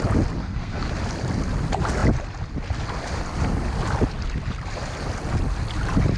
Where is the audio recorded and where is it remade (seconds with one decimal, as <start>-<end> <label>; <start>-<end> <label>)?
0.0-0.4 recorded; 0.4-0.9 remade; 0.9-6.2 recorded